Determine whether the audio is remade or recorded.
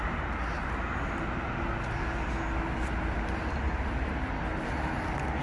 recorded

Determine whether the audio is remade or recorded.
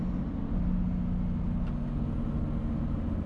recorded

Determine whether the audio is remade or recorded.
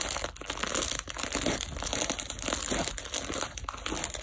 recorded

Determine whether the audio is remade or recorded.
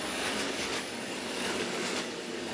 remade